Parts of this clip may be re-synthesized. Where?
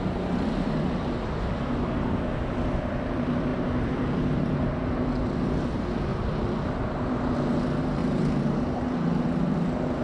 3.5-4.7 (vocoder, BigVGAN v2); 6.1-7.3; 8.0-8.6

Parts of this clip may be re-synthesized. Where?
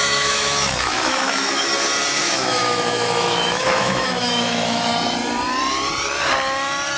0.0-1.7 (autoencoder, DAC-VAE); 2.2-4.9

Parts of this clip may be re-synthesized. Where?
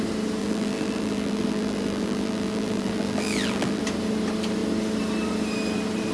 0.4-3.8 (vocoder, BigVGAN v2)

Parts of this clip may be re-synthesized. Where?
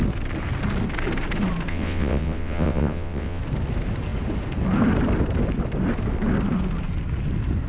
1.7-3.4 (vocoder, WaveNeXt)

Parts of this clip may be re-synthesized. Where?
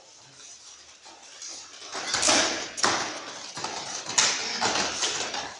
none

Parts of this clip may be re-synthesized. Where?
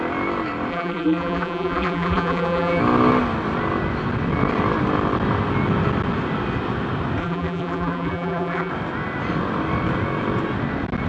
0.7-2.8 (vocoder, BigVGAN v2); 7.2-8.7